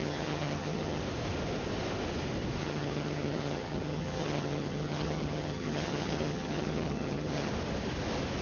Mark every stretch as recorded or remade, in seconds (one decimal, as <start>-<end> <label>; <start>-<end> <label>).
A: 0.0-1.0 remade; 1.0-2.6 recorded; 2.6-7.5 remade; 7.5-8.4 recorded